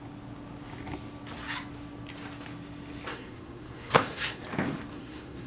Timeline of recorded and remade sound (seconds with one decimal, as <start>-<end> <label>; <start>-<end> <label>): 0.0-3.1 recorded; 3.1-4.4 remade; 4.4-4.9 recorded; 4.9-5.5 remade

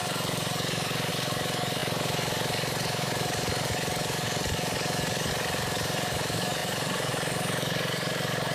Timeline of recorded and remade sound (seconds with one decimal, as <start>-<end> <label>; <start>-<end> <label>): 0.0-8.5 remade

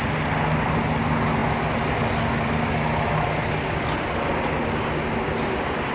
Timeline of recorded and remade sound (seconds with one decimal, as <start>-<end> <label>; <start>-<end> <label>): 0.0-5.9 recorded

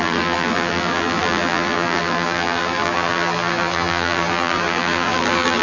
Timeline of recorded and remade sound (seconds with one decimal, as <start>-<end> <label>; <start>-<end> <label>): 0.0-5.6 remade

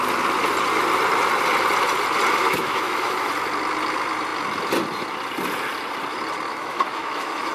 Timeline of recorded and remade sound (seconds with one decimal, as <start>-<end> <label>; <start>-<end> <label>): 0.0-2.4 recorded; 2.4-3.3 remade; 3.3-6.5 recorded; 6.5-7.5 remade

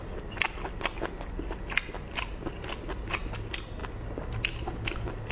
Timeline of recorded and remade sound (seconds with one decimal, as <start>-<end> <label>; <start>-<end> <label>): 0.0-5.3 recorded